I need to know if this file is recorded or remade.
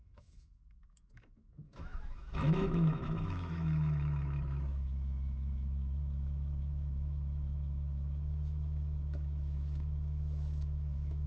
remade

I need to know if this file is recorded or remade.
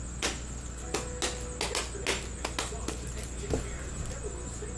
recorded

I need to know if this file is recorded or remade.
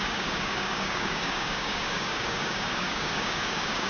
remade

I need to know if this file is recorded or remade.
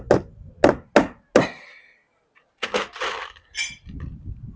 recorded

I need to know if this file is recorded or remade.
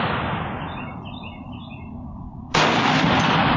recorded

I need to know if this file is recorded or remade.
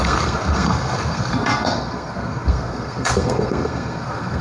remade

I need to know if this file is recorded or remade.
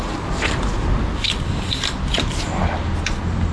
recorded